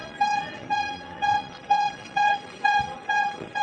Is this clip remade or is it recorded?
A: remade